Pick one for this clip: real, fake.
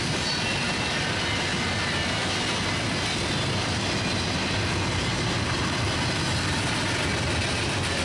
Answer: real